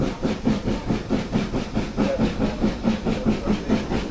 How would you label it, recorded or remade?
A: recorded